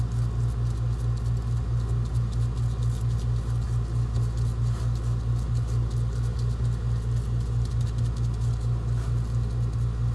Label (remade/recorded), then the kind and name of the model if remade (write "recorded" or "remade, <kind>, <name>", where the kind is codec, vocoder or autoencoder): recorded